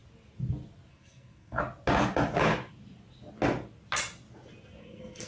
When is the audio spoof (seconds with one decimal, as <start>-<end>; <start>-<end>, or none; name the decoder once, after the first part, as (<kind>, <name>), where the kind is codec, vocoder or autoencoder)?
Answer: 0.9-1.6 (codec, SNAC); 4.8-5.3